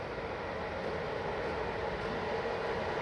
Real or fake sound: real